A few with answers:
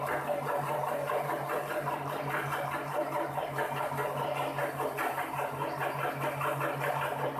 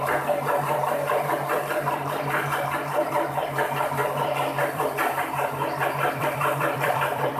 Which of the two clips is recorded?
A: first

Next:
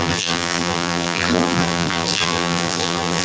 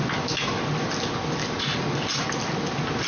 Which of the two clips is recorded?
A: second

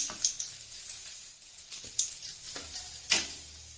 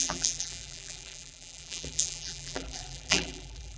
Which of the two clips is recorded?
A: first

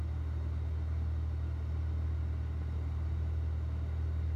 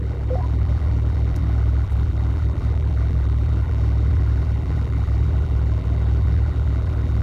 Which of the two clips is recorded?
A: first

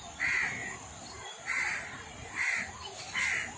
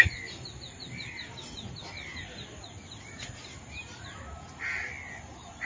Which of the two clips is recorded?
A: second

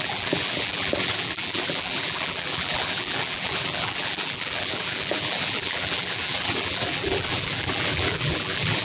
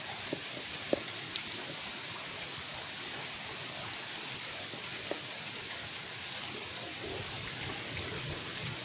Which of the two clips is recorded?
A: second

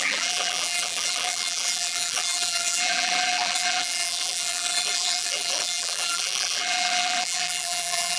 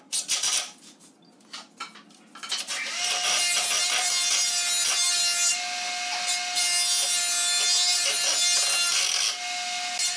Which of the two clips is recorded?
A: second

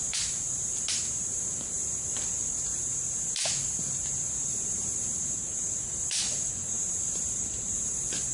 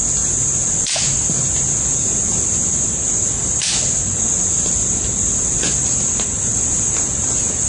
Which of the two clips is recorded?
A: second